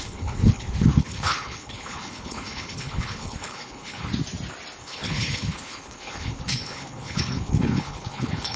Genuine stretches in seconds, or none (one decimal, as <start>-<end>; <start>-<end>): 4.1-4.8